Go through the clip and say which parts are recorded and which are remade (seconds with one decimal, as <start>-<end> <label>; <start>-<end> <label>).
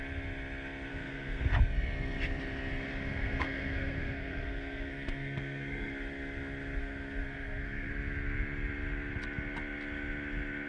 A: 0.0-0.9 recorded; 0.9-1.5 remade; 1.5-3.1 recorded; 3.1-5.9 remade; 5.9-6.8 recorded; 6.8-7.9 remade; 7.9-10.7 recorded